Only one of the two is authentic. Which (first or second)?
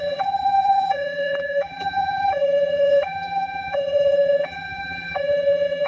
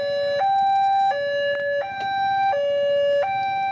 second